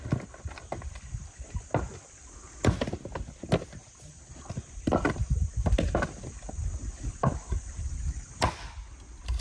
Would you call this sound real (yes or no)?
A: yes